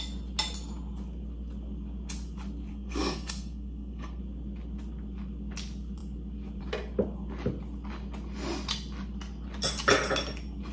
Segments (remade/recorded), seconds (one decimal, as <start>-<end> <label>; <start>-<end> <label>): 0.0-2.7 recorded; 2.7-4.2 remade; 4.2-10.7 recorded